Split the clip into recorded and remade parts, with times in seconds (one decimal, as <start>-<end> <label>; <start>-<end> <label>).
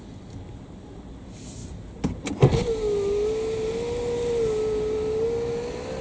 0.0-6.0 recorded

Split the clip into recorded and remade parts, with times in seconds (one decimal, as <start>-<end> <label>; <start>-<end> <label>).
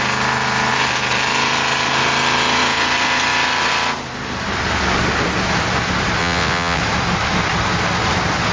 0.0-6.2 recorded; 6.2-6.8 remade; 6.8-8.5 recorded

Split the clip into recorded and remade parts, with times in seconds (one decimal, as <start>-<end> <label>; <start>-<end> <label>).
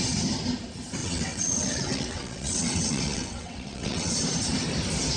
0.0-1.0 recorded; 1.0-4.1 remade; 4.1-5.2 recorded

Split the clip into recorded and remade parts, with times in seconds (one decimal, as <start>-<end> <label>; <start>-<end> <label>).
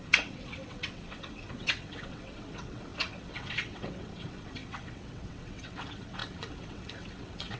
0.0-7.6 remade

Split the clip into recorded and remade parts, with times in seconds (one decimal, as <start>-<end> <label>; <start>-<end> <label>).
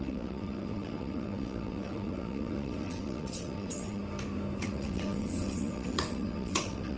0.0-4.0 remade; 4.0-4.6 recorded; 4.6-7.0 remade